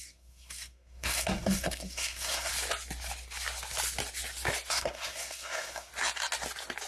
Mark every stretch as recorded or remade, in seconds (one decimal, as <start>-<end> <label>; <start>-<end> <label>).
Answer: 0.0-2.5 remade; 2.5-4.7 recorded; 4.7-5.9 remade; 5.9-6.9 recorded